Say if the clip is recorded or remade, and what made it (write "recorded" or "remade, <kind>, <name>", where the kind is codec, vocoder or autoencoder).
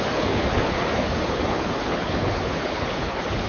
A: remade, codec, HILCodec